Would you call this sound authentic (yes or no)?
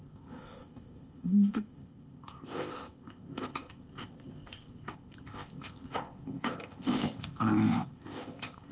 no